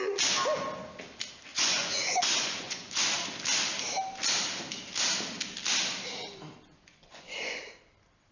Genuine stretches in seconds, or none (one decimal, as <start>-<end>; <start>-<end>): 0.0-1.5; 3.0-6.7; 7.6-8.3